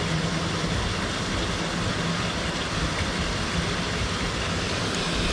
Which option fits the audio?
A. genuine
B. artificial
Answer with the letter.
A